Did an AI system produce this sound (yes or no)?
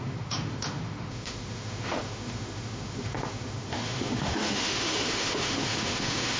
yes